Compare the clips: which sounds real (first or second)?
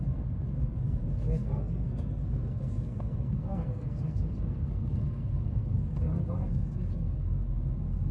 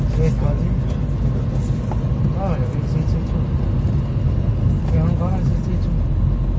second